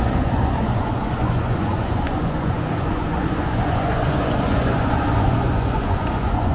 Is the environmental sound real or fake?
fake